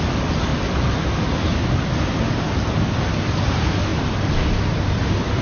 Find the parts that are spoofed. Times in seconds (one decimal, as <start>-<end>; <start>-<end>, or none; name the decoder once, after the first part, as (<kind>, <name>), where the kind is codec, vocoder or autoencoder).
none